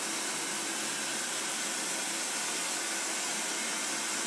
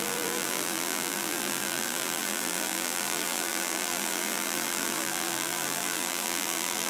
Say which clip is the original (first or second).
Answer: first